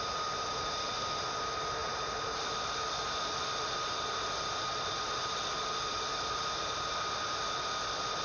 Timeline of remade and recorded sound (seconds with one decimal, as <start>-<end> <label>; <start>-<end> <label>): 0.0-8.2 recorded